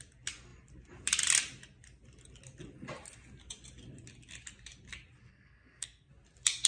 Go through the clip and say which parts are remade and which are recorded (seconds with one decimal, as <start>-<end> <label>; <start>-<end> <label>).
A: 0.0-5.3 recorded; 5.3-6.1 remade; 6.1-6.7 recorded